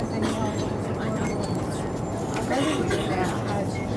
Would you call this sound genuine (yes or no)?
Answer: yes